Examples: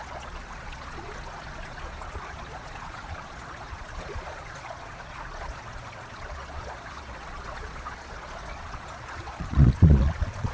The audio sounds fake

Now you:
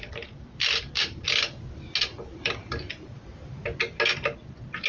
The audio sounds real